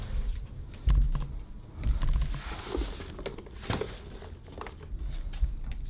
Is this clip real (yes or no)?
yes